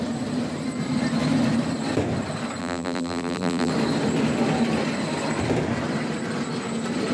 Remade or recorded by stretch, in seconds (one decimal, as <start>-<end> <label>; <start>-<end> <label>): 0.0-2.6 recorded; 2.6-3.7 remade; 3.7-7.1 recorded